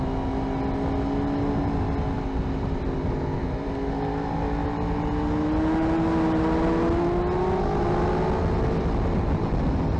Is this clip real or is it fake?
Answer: real